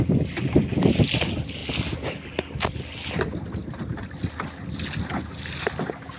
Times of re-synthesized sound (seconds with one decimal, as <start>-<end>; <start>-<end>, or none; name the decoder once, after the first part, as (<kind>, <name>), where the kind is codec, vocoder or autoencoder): 3.6-4.2 (vocoder, BigVGAN v2)